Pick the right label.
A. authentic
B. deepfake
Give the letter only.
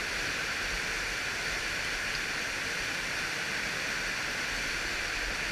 A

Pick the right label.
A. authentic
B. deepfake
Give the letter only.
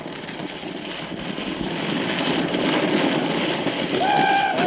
A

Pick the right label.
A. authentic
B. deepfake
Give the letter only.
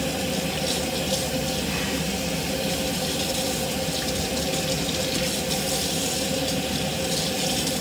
A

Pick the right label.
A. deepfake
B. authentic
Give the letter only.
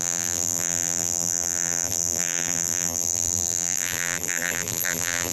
A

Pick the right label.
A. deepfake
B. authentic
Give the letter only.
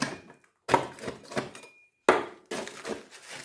B